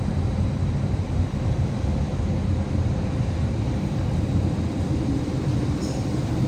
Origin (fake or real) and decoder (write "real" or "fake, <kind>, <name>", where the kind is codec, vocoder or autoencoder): fake, vocoder, BigVGAN v2